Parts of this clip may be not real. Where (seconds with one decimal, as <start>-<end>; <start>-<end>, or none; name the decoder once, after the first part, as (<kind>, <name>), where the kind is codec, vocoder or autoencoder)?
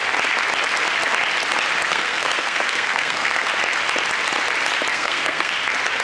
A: 1.9-3.5 (codec, SNAC); 4.9-5.5